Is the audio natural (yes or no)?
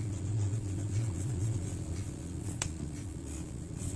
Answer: no